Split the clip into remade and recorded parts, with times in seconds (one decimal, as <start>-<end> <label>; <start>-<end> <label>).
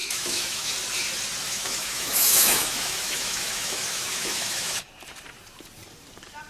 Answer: 0.0-0.7 remade; 0.7-1.4 recorded; 1.4-4.9 remade; 4.9-6.5 recorded